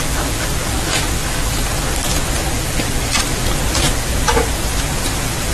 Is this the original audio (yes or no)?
yes